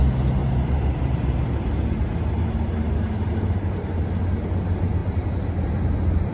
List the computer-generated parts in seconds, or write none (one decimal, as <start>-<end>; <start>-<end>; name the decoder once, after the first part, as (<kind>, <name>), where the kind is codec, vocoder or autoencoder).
0.4-4.2 (vocoder, BigVGAN v2)